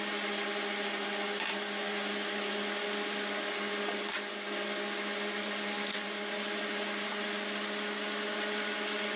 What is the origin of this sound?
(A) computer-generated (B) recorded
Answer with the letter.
B